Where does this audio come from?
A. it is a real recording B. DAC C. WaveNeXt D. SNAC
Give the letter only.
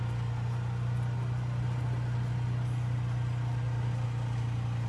A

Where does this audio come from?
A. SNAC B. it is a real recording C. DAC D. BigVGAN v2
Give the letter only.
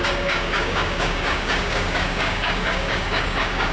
C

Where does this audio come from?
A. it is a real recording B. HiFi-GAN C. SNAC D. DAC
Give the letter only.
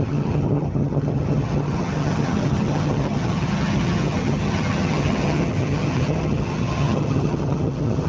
B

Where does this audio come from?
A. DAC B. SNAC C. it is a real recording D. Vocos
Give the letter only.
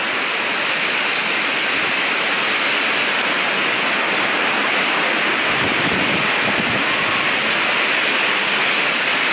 C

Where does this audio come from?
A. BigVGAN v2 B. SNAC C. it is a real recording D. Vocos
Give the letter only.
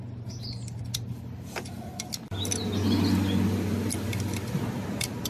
C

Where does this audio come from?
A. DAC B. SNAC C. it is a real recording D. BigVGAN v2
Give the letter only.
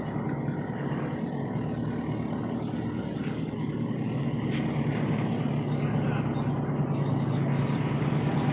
C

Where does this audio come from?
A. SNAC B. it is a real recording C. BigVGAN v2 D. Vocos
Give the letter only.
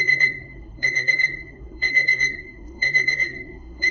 A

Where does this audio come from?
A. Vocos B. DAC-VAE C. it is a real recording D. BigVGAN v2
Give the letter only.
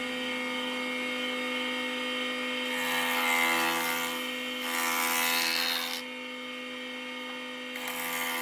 C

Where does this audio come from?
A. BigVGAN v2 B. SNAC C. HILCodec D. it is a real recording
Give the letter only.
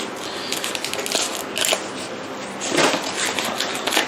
D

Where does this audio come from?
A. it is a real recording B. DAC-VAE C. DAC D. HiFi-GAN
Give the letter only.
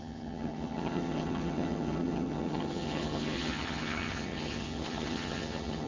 D